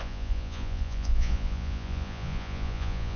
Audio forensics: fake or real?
fake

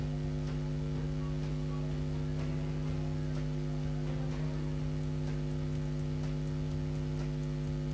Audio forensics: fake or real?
real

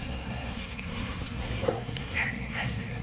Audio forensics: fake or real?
fake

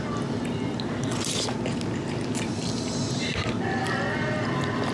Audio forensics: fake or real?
real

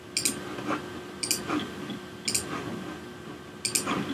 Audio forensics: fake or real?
real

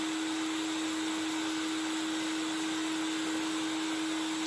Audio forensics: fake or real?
real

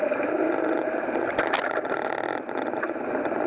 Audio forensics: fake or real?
real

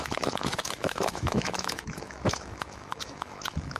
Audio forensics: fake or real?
fake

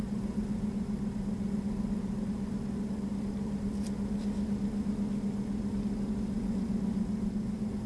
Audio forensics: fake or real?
real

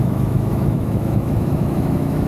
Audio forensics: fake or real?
fake